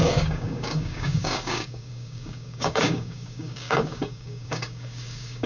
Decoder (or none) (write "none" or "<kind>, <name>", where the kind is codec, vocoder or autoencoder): codec, DAC